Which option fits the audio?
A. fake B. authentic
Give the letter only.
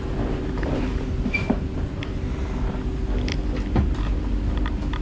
B